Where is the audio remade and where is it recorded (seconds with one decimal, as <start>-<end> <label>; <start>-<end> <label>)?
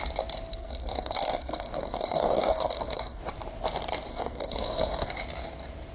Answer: 0.0-0.5 recorded; 0.5-3.2 remade; 3.2-4.1 recorded; 4.1-5.1 remade; 5.1-5.9 recorded